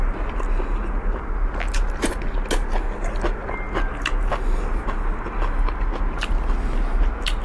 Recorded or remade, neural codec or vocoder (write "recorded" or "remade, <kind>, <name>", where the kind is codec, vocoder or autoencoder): recorded